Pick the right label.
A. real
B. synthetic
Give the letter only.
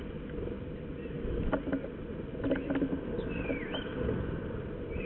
A